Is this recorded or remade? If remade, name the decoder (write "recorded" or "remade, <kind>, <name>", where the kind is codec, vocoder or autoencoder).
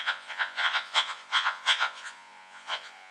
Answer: remade, vocoder, Vocos